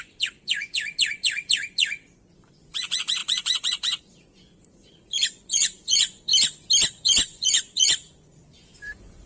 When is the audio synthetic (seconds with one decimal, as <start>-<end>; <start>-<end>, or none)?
0.0-6.3; 6.9-9.3